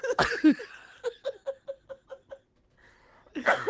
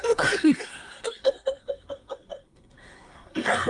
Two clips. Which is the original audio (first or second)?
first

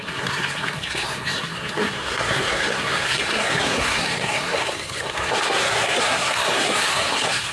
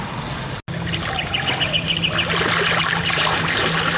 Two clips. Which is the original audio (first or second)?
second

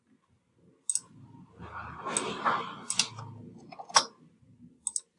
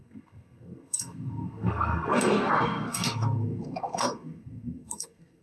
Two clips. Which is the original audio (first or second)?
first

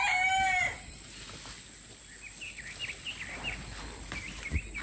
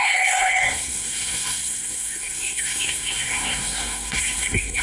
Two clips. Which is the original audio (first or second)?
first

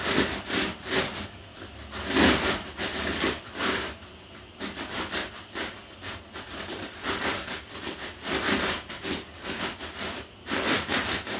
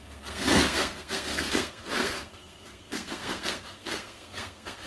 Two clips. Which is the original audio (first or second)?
first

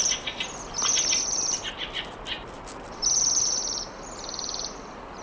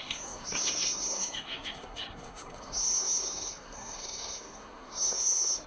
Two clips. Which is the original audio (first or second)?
first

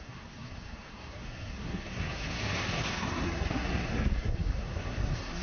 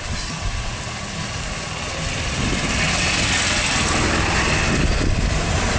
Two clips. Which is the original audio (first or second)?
second